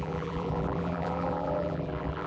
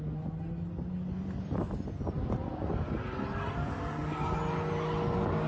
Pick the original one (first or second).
second